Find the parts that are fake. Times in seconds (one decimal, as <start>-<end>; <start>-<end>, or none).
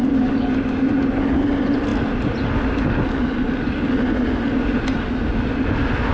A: none